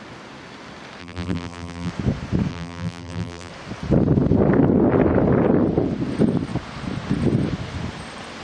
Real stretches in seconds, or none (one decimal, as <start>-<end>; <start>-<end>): 0.0-1.0; 1.9-2.5; 3.5-8.4